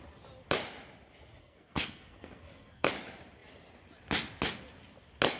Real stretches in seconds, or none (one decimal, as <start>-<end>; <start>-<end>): 0.0-1.4; 2.9-5.4